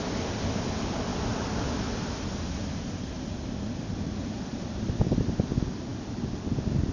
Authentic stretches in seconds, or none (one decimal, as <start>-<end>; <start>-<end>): 0.0-1.1; 4.7-6.9